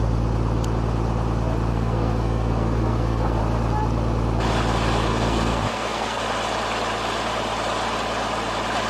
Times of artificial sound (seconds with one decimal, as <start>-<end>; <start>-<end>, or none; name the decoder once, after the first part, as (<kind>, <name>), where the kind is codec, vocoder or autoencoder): 1.7-3.4 (codec, SNAC); 5.1-6.2